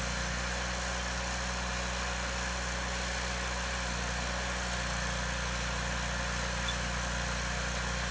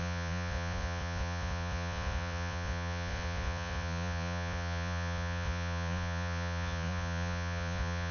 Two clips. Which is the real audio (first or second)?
first